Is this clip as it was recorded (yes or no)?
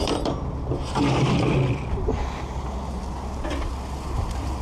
yes